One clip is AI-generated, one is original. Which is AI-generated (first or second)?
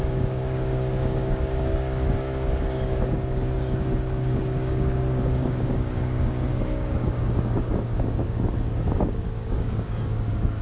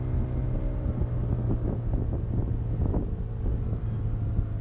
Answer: first